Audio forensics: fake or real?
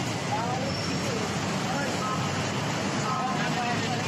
real